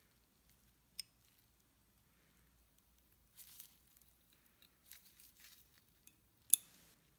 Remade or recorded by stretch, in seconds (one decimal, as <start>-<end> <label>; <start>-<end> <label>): 0.0-2.6 recorded; 2.6-6.4 remade; 6.4-7.2 recorded